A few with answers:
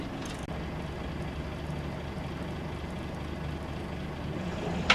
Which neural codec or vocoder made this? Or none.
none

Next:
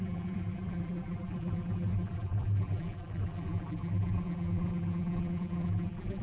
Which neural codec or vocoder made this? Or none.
vocoder, BigVGAN v2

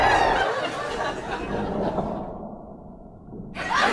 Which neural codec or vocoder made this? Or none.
none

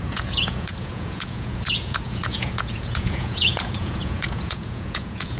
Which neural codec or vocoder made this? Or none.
vocoder, Vocos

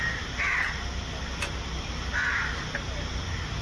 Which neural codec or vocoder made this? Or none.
none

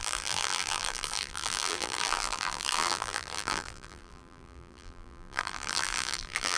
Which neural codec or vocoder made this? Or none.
vocoder, BigVGAN v2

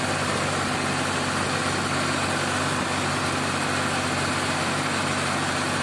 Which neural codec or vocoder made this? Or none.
none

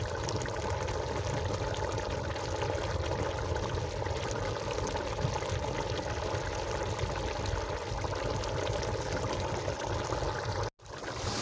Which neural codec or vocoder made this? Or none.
none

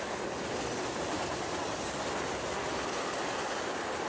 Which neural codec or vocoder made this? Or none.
none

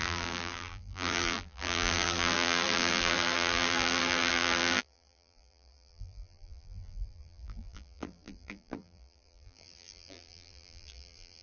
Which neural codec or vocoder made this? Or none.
vocoder, BigVGAN v2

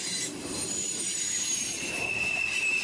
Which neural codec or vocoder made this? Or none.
vocoder, BigVGAN v2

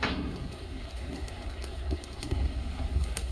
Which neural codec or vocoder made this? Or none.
codec, SNAC